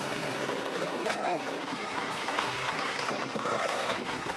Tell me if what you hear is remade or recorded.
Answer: remade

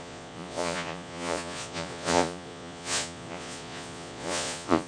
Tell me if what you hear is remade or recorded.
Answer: remade